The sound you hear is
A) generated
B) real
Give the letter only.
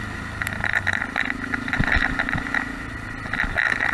B